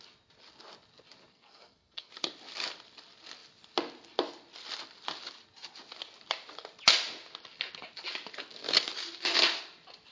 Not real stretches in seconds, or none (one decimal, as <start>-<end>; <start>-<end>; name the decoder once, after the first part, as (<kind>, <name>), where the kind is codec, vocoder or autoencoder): 1.3-2.1 (codec, SNAC)